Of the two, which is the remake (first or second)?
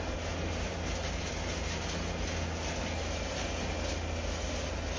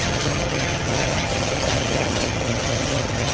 second